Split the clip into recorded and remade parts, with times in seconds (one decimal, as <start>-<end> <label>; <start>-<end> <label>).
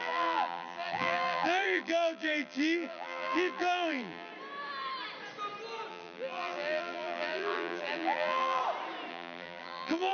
0.0-4.3 remade; 4.3-5.9 recorded; 5.9-8.6 remade; 8.6-9.1 recorded; 9.1-10.1 remade